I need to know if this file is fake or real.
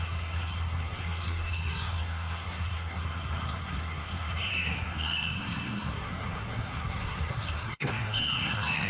fake